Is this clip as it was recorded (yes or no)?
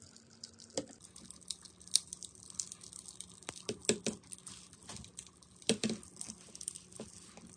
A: yes